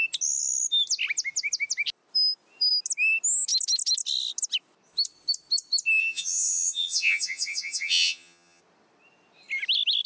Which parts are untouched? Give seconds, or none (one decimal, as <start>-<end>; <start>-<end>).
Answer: 0.0-6.0; 8.6-10.1